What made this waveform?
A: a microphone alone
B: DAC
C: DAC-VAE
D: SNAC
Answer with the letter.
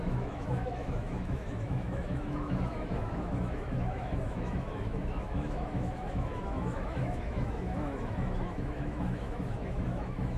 C